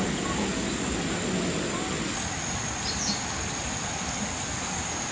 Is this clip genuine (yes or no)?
yes